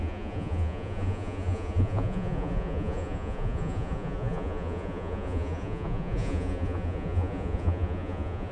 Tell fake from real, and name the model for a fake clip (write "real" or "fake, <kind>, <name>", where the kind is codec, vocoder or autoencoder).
fake, vocoder, Vocos